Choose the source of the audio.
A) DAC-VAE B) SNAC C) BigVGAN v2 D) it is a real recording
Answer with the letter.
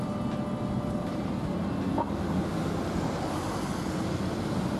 D